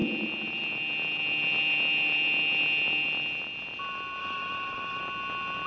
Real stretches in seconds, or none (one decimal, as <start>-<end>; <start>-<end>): 0.0-4.2; 5.0-5.7